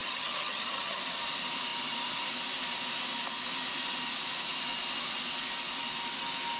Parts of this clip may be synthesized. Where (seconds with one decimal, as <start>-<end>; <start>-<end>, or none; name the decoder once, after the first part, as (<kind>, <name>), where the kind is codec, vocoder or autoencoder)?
0.0-1.0 (vocoder, HiFi-GAN)